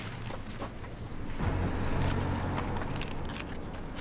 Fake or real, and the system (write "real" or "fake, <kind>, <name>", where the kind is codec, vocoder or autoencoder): real